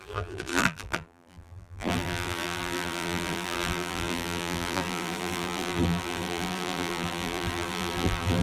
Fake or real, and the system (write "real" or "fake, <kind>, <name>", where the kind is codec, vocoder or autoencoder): fake, vocoder, BigVGAN v2